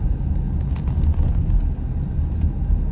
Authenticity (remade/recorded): recorded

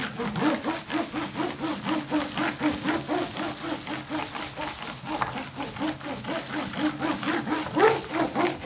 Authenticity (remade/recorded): recorded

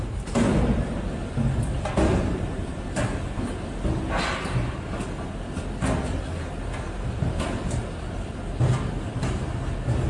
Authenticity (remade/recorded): recorded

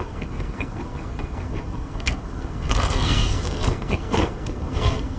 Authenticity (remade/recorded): remade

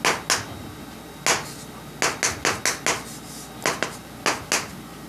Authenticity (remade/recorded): recorded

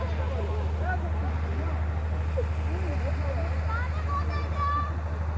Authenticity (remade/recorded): recorded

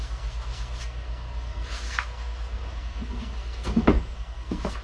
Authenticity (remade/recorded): remade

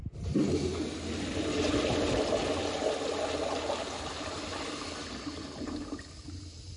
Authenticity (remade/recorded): recorded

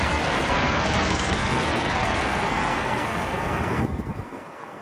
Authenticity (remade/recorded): remade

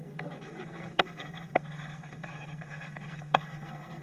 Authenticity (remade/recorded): remade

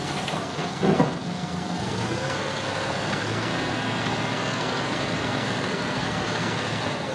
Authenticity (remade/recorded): remade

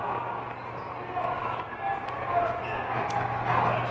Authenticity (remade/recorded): recorded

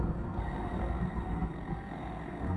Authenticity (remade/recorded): remade